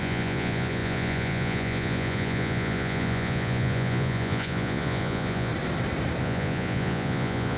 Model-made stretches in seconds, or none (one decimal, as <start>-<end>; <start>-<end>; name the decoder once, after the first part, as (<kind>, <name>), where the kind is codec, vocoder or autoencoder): 0.0-5.5 (vocoder, Vocos); 6.2-7.6

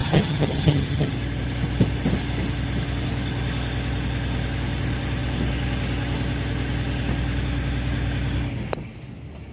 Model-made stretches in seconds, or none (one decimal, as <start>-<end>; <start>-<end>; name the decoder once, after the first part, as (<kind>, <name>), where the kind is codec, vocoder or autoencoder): 0.0-1.1 (vocoder, HiFi-GAN)

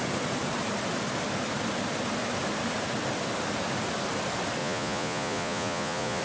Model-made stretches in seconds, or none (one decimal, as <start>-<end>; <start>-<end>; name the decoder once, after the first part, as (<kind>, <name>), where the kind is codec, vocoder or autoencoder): 4.6-6.2 (vocoder, Vocos)

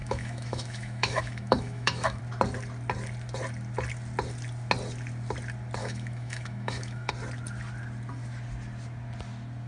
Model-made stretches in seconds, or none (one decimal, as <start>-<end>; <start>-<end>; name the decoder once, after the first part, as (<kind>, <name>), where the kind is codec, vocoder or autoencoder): 0.0-2.2 (autoencoder, DAC-VAE); 5.8-7.1